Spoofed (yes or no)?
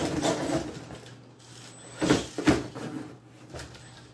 no